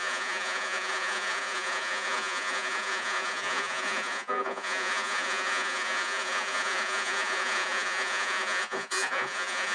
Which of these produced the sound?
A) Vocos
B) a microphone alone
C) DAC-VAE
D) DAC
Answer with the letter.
A